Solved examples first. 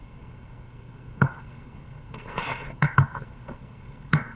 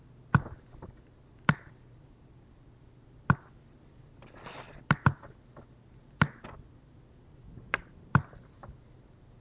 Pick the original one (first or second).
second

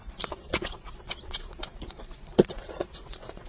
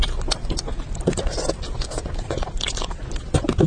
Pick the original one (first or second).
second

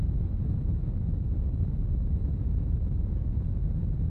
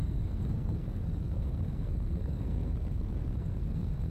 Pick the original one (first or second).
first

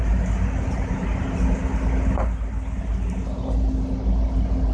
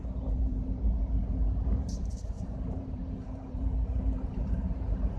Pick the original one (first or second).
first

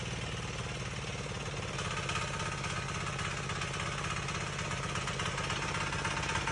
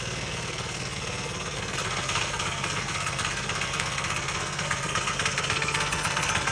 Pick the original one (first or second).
first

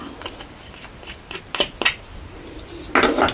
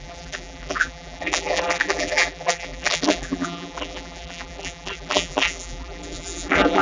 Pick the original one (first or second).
first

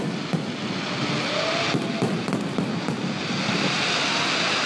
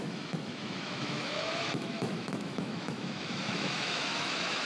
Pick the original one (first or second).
first